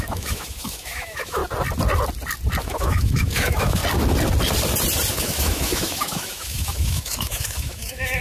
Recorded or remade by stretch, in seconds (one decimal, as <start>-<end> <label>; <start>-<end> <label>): 0.0-1.4 remade; 1.4-2.6 recorded; 2.6-3.8 remade; 3.8-5.1 recorded; 5.1-8.2 remade